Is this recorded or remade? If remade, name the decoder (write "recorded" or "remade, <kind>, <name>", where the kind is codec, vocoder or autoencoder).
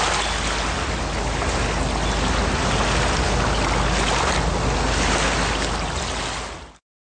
recorded